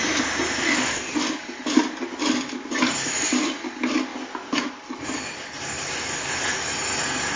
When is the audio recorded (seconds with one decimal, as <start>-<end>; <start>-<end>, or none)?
0.0-0.6; 1.2-7.4